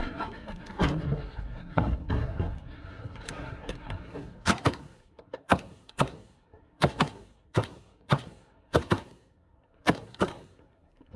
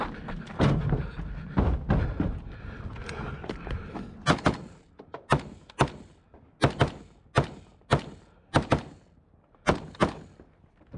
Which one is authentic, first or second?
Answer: second